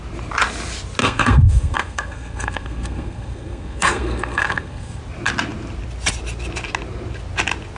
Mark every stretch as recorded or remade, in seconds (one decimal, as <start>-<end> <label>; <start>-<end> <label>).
0.0-1.0 recorded; 1.0-5.0 remade; 5.0-7.8 recorded